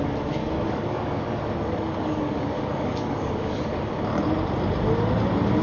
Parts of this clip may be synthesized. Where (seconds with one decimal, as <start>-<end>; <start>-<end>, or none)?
0.4-3.6